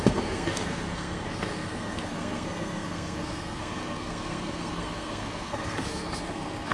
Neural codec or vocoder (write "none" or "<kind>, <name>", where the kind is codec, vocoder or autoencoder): codec, SNAC